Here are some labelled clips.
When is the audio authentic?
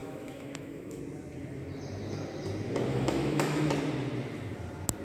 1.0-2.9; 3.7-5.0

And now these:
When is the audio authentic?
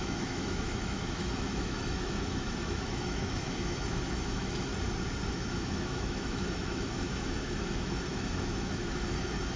4.7-5.3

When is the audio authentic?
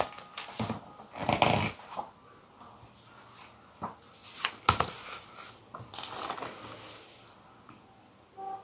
0.0-8.6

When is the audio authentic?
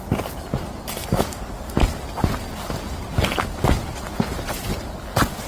0.0-5.5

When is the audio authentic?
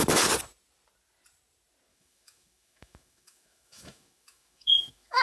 0.0-1.9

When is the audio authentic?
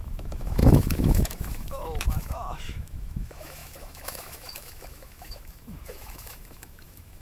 none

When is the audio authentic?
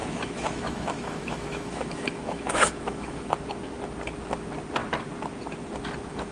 3.3-6.3